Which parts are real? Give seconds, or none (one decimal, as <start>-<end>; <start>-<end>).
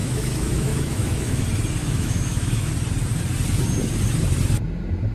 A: 1.4-1.8; 2.7-5.1